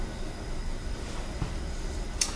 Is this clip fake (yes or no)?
no